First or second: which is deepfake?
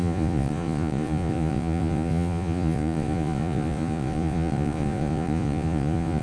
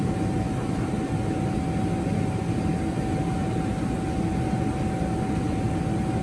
first